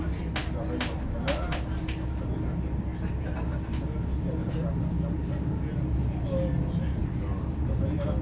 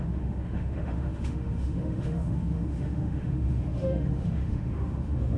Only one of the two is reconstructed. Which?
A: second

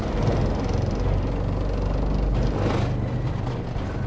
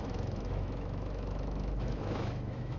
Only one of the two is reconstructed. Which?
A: second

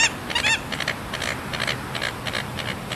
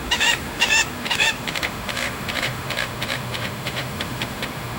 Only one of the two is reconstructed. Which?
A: second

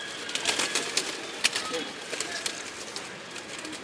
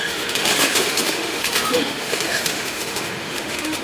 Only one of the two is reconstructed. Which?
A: second